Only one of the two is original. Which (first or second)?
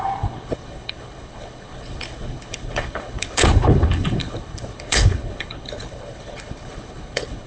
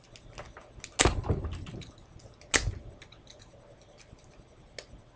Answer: second